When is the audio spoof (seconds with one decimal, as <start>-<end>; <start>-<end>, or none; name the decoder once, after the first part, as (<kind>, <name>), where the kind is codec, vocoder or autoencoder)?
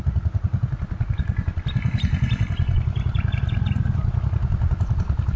none